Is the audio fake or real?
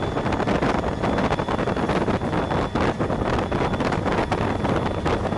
real